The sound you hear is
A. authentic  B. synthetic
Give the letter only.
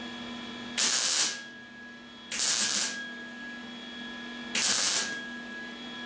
A